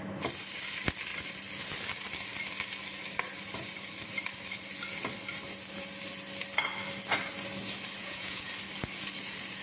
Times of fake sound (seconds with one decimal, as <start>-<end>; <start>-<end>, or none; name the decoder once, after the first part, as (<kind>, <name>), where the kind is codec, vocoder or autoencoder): 8.0-8.5 (vocoder, Vocos)